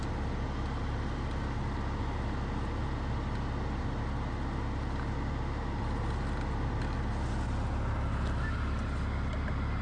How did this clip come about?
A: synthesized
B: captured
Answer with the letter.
B